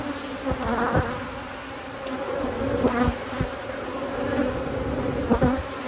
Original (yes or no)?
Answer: yes